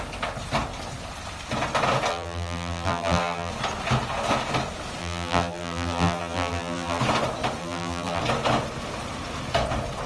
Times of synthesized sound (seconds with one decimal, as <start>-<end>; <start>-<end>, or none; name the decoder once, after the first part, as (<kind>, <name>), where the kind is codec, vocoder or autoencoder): 2.1-3.5 (vocoder, BigVGAN v2); 5.0-7.0; 7.6-8.2